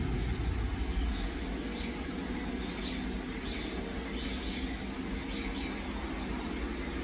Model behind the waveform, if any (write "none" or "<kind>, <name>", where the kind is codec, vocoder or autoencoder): none